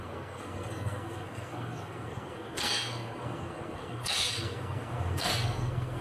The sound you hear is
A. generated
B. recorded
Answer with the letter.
A